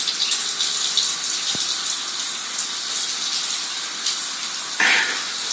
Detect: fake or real real